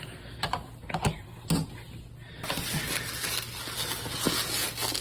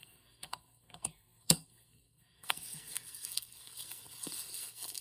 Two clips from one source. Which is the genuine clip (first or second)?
first